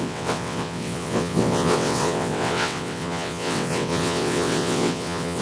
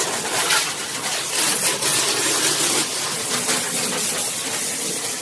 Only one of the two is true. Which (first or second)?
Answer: second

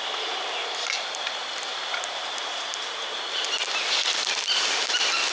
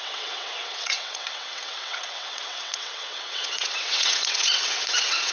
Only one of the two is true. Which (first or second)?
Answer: first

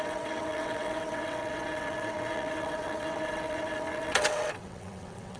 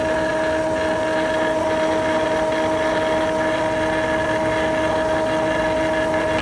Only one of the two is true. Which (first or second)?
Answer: second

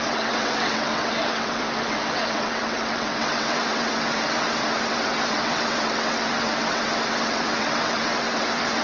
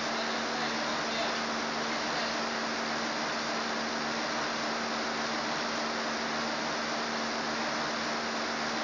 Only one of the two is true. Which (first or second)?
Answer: second